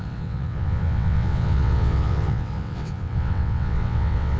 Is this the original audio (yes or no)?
no